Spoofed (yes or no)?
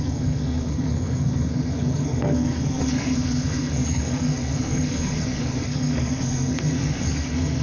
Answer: yes